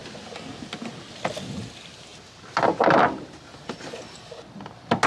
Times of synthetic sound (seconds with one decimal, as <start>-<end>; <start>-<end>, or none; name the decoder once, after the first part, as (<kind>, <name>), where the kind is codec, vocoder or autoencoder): none